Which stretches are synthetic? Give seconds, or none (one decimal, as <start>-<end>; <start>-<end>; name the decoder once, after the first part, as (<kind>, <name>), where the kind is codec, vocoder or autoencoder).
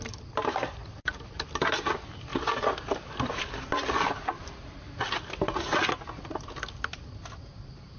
none